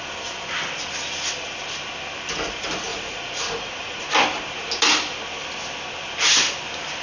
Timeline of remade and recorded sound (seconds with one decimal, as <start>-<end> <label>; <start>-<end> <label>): 0.0-2.9 recorded; 2.9-4.0 remade; 4.0-7.0 recorded